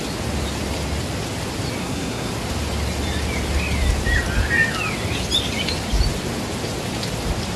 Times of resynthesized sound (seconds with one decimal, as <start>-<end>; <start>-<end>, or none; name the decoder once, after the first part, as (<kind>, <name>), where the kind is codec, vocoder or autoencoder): 1.8-2.3 (codec, SNAC)